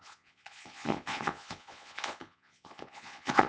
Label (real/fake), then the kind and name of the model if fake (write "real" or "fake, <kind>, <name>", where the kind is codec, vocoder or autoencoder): fake, vocoder, Vocos